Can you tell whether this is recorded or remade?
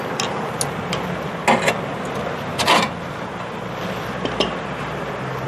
recorded